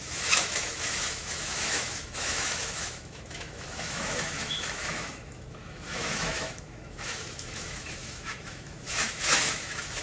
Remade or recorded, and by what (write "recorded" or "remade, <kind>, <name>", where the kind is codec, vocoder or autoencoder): remade, autoencoder, DAC-VAE